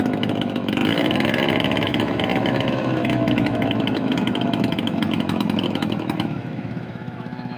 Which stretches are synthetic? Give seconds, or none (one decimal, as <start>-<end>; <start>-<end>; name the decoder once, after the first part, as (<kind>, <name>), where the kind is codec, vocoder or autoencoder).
0.0-7.6 (autoencoder, DAC-VAE)